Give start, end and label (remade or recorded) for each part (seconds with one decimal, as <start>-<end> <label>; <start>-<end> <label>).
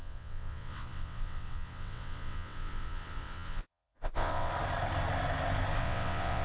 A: 0.0-4.5 remade; 4.5-5.8 recorded; 5.8-6.4 remade